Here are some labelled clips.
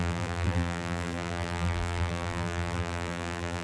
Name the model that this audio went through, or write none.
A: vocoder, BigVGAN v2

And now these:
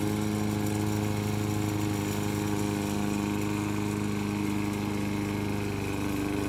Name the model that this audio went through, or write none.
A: none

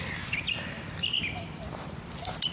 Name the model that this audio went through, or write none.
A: none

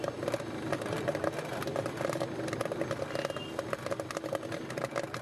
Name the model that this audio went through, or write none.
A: vocoder, BigVGAN v2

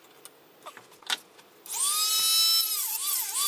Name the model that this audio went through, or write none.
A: none